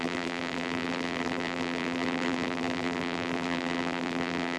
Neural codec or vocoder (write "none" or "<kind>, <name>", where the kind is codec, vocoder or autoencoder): vocoder, BigVGAN v2